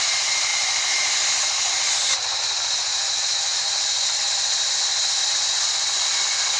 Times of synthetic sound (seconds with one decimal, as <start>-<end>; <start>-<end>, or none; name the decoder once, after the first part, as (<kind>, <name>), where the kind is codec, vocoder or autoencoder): 0.0-0.5 (vocoder, BigVGAN v2); 2.4-3.5; 4.3-6.6